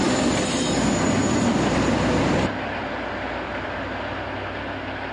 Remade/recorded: recorded